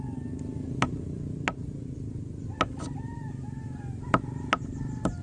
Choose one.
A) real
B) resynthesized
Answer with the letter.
A